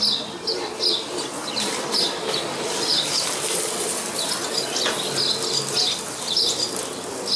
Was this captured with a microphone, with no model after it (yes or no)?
yes